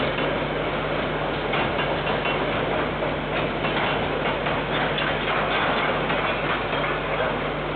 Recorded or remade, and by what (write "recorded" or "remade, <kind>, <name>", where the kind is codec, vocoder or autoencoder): recorded